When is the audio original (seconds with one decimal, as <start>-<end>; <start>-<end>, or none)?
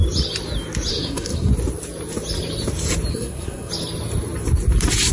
0.0-0.9; 1.5-3.1; 3.7-5.1